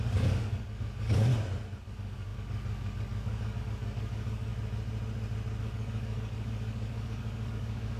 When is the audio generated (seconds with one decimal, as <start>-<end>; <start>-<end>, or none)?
0.0-1.3; 1.8-4.5; 5.6-8.0